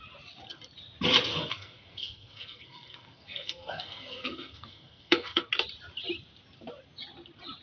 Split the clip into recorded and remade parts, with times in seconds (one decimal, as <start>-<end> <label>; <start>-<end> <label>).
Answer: 0.0-1.3 recorded; 1.3-5.5 remade; 5.5-7.6 recorded